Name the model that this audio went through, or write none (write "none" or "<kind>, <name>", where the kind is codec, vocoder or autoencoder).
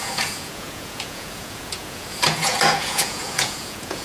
vocoder, Vocos